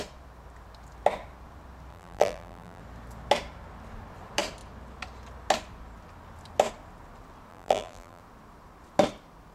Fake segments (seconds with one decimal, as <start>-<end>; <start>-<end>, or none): 1.9-2.8; 7.5-8.2